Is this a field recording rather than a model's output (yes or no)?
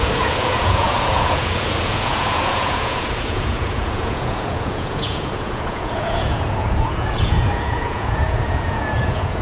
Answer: no